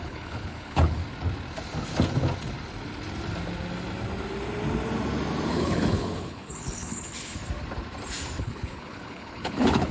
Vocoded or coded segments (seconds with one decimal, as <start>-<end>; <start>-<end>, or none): 0.0-1.0; 5.5-7.4; 8.4-9.9